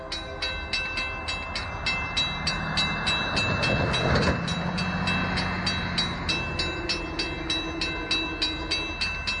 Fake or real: real